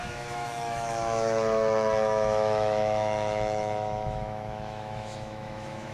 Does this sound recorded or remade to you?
remade